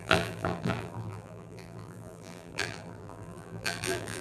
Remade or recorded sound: remade